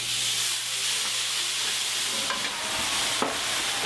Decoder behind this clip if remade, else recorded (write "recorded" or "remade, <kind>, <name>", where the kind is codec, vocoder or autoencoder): recorded